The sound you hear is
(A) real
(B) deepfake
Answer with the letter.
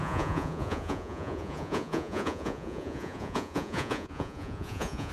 B